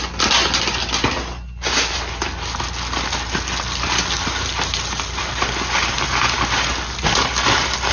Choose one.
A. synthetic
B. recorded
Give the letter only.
B